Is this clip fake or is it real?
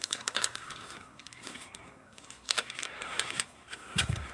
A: fake